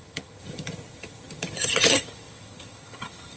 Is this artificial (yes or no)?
yes